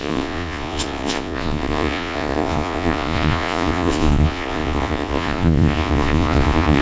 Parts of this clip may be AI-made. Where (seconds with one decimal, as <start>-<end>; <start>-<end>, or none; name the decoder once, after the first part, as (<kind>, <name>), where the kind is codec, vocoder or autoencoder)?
0.0-6.8 (vocoder, Vocos)